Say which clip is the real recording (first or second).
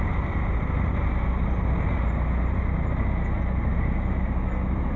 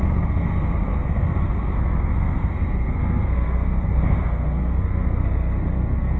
first